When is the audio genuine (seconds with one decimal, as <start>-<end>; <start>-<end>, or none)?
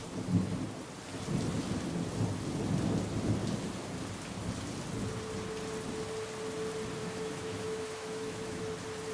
0.0-7.0; 8.6-9.1